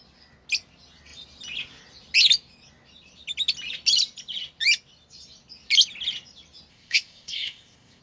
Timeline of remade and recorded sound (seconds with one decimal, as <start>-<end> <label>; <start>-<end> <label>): 0.0-6.7 recorded; 6.7-8.0 remade